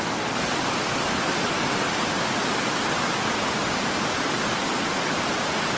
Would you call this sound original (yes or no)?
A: yes